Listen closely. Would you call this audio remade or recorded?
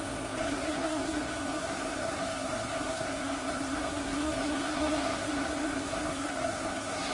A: remade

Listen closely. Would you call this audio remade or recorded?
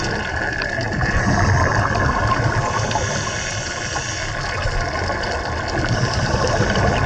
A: recorded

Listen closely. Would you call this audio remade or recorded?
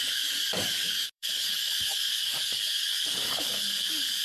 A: remade